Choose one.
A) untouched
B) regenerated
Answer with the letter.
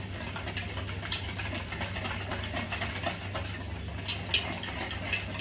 A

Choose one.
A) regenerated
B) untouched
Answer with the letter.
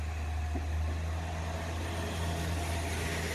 B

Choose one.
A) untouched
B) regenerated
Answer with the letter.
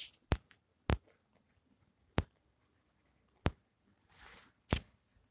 A